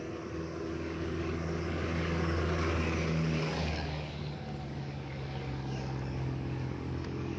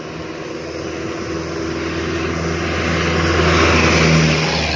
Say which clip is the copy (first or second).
first